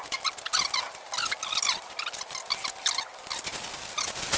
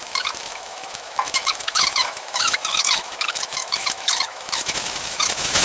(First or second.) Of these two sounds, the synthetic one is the second